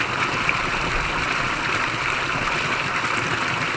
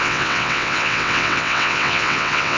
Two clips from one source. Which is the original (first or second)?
first